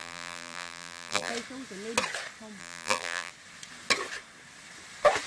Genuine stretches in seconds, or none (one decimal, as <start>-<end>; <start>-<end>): 1.3-2.6; 3.3-5.3